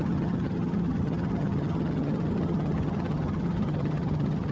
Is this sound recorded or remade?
remade